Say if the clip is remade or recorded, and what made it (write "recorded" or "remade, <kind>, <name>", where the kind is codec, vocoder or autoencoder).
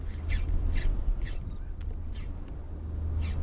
recorded